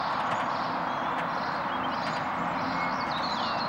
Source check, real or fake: real